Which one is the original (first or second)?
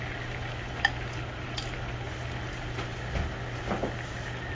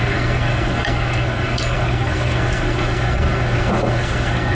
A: first